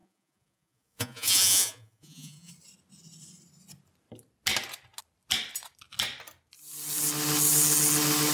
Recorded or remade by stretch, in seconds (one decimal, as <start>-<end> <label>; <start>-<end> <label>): 0.0-2.5 remade; 2.5-8.3 recorded